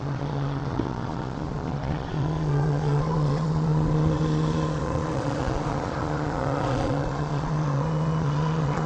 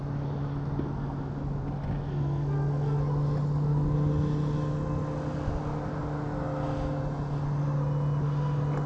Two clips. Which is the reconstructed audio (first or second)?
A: first